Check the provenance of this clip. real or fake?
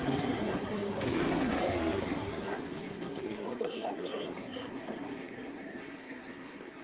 fake